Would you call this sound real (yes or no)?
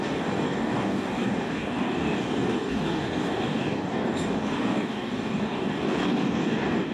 no